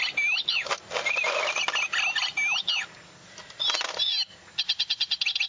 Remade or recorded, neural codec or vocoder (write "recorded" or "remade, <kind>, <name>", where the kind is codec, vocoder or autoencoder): recorded